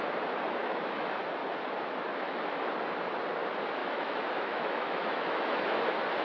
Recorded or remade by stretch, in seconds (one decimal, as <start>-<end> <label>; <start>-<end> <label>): 0.0-0.6 recorded; 0.6-1.2 remade; 1.2-2.1 recorded; 2.1-2.7 remade; 2.7-3.8 recorded; 3.8-5.8 remade; 5.8-6.2 recorded